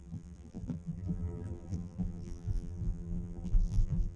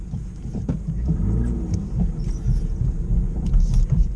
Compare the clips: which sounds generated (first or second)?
first